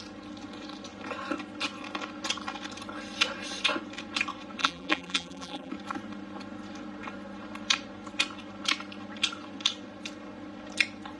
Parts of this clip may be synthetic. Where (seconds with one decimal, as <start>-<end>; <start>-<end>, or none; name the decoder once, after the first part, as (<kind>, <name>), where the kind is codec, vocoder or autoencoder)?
4.6-5.7 (vocoder, BigVGAN v2)

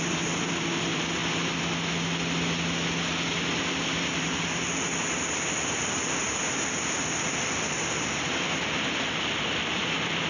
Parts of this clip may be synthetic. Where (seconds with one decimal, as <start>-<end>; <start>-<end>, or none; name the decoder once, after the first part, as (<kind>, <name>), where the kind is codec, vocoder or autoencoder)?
0.0-1.2 (vocoder, BigVGAN v2); 3.6-10.3

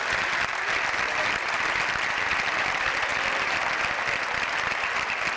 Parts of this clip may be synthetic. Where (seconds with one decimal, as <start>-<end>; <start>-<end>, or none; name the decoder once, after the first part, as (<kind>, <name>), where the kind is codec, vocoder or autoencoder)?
none

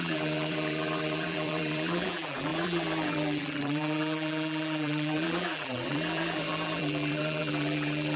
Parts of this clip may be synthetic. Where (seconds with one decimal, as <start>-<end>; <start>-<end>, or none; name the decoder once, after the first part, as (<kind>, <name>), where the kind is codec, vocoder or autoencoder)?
0.0-8.2 (vocoder, BigVGAN v2)